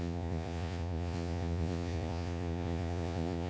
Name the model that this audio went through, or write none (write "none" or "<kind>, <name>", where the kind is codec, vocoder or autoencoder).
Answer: vocoder, Vocos